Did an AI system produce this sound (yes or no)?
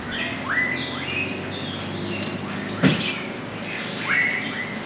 no